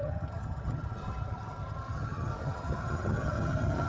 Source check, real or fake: fake